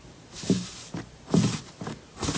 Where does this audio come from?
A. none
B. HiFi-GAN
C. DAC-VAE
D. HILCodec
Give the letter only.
A